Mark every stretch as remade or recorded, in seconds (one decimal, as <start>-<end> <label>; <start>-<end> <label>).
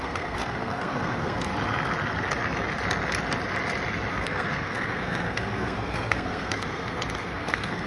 0.0-1.5 remade; 1.5-4.1 recorded; 4.1-7.9 remade